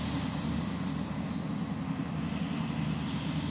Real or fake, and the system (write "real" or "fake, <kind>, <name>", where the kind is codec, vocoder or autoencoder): real